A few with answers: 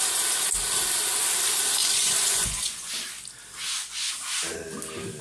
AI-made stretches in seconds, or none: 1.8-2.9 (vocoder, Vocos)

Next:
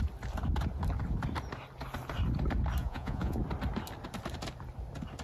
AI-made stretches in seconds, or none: 2.8-3.4 (vocoder, Vocos)

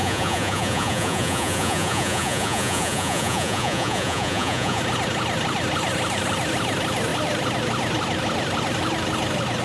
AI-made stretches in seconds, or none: 0.0-4.8 (vocoder, Vocos)

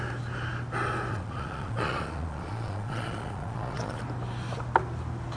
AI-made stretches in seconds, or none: 1.1-4.0 (vocoder, Vocos)

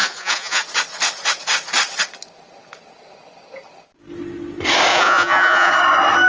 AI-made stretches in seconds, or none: 0.0-0.6 (vocoder, Vocos); 4.9-5.7

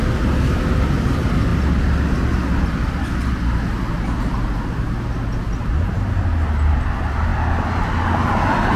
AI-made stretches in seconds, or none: none

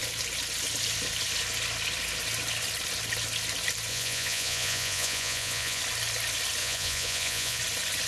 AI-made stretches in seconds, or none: 3.9-5.8 (vocoder, Vocos); 6.6-7.6

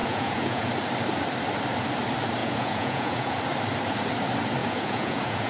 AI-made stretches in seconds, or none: 0.0-0.7 (vocoder, Vocos); 2.4-3.4; 4.6-5.5